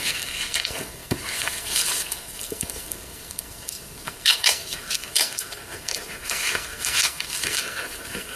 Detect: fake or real fake